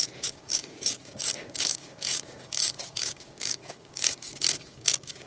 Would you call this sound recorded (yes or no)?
no